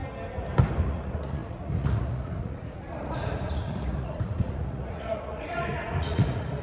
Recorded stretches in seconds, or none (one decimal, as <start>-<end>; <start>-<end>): 0.0-0.8